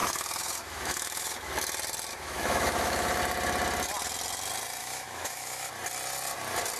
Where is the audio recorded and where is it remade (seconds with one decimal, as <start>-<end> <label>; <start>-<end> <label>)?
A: 0.0-1.5 remade; 1.5-2.1 recorded; 2.1-3.2 remade; 3.2-4.8 recorded; 4.8-5.7 remade; 5.7-6.8 recorded